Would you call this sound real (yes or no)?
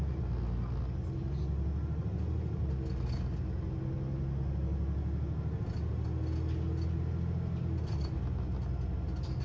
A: yes